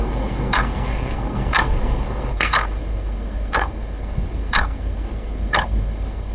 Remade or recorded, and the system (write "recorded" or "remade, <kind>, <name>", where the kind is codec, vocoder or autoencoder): remade, codec, SNAC